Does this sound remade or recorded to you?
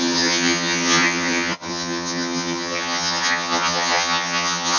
remade